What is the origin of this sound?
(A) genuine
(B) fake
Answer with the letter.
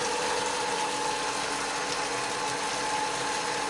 A